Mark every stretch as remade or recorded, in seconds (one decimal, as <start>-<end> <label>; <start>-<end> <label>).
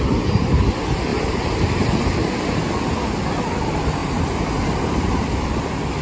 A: 0.0-1.1 recorded; 1.1-2.6 remade; 2.6-6.0 recorded